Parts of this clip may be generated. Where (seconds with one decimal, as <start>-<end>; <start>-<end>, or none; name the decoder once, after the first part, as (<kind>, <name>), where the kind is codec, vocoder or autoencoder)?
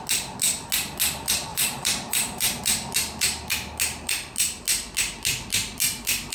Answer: 1.5-2.6 (vocoder, BigVGAN v2)